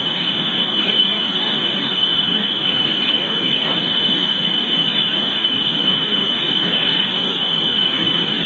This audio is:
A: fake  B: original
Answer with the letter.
A